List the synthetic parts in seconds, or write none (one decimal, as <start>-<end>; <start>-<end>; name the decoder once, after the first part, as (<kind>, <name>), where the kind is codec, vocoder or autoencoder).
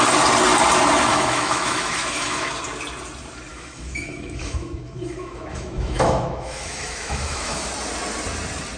1.1-2.5 (autoencoder, DAC-VAE); 3.5-7.7